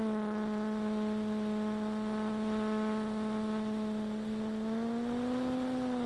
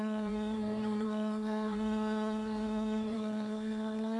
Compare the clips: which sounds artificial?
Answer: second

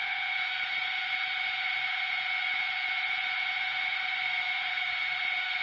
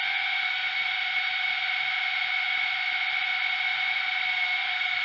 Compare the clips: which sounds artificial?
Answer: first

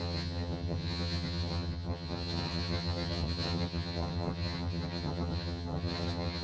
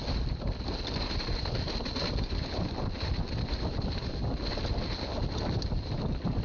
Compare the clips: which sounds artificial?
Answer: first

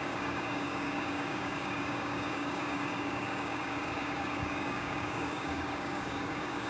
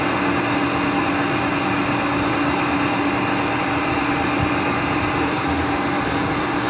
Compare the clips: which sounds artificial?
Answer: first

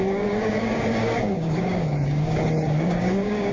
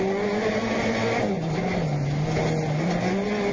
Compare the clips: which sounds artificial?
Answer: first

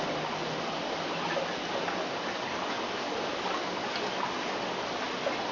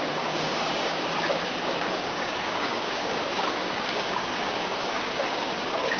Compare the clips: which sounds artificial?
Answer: second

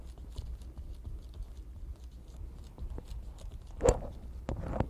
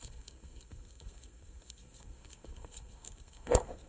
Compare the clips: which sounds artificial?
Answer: second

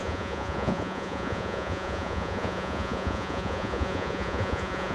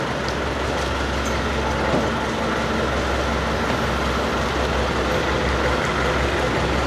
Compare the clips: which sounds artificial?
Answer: first